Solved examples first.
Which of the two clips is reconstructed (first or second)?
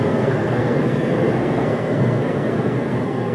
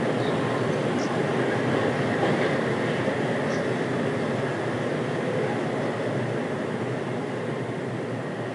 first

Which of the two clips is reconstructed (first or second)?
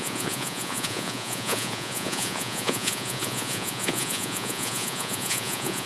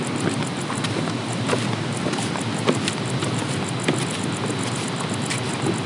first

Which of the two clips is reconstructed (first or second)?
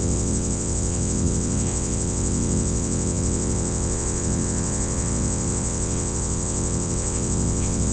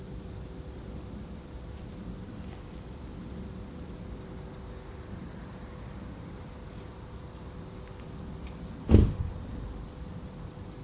first